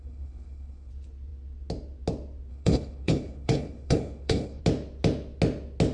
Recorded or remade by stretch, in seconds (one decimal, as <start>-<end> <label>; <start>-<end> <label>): 0.0-0.9 remade; 0.9-2.5 recorded; 2.5-4.6 remade; 4.6-5.9 recorded